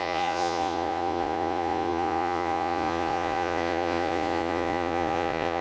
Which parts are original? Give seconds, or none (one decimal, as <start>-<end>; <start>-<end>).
none